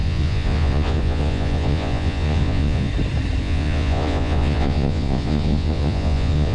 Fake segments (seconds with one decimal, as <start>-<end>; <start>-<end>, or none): 0.0-2.9; 3.4-6.5